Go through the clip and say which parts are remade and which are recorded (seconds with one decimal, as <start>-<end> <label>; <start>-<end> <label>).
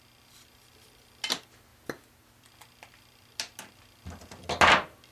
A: 0.0-5.1 recorded